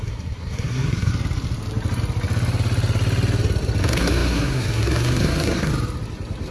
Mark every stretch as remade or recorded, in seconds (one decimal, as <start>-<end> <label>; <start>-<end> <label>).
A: 0.0-1.1 remade; 1.1-3.8 recorded; 3.8-5.7 remade; 5.7-6.5 recorded